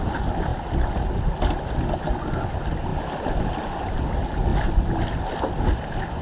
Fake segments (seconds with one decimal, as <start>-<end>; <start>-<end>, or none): none